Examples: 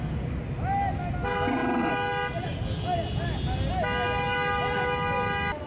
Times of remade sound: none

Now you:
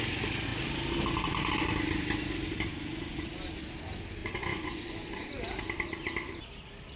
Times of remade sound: 4.2-5.3 (vocoder, Vocos)

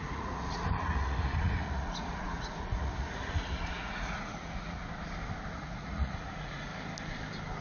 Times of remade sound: 0.0-4.8 (vocoder, Vocos); 5.5-6.7

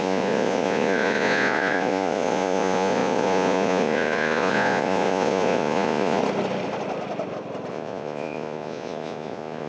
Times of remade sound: 0.0-6.2 (vocoder, Vocos); 7.7-9.7

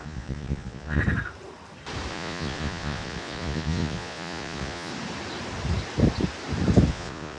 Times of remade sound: 0.0-1.0 (vocoder, Vocos); 2.1-4.9; 6.9-7.4

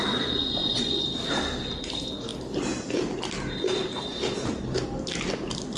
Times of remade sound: 0.6-1.1 (vocoder, Vocos)

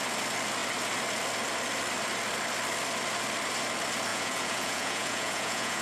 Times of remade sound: 4.1-5.8 (vocoder, Vocos)

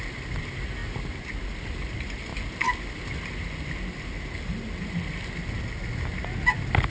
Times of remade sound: none